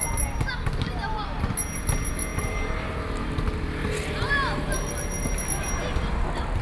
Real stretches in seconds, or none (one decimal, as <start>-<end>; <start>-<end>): 0.0-6.6